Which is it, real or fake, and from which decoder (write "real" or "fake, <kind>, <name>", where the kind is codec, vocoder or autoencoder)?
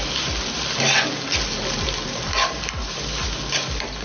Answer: real